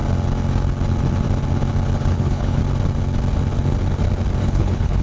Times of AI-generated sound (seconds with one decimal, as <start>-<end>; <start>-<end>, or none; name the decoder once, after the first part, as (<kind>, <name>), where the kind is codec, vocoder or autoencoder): 2.1-2.6 (codec, HILCodec); 4.4-5.0